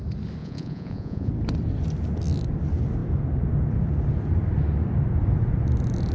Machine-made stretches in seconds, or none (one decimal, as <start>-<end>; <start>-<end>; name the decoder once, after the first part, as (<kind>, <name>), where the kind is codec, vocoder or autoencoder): 0.4-1.3 (vocoder, Vocos)